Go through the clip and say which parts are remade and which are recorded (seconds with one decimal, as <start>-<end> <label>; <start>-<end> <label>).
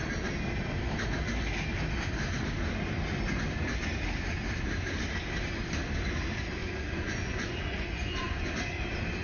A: 0.0-6.6 recorded; 6.6-8.5 remade; 8.5-9.2 recorded